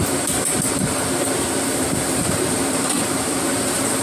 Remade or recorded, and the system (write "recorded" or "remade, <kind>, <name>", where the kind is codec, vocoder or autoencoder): remade, vocoder, BigVGAN v2